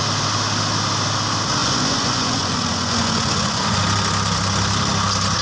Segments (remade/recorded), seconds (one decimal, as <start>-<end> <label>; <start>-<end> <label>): 0.0-1.6 recorded; 1.6-3.8 remade; 3.8-5.4 recorded